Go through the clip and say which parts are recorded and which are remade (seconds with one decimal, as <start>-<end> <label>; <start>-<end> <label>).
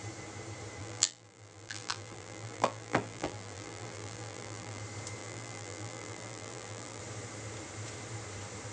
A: 0.0-0.8 recorded; 0.8-4.8 remade; 4.8-5.2 recorded; 5.2-7.0 remade; 7.0-8.7 recorded